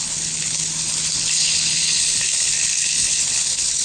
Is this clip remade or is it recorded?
remade